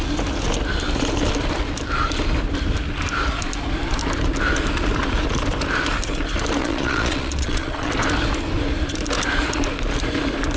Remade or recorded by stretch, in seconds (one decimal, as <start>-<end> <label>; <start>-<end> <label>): 0.0-6.6 recorded; 6.6-7.9 remade; 7.9-10.6 recorded